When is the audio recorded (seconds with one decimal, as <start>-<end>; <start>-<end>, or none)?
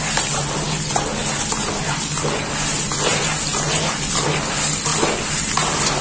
0.0-6.0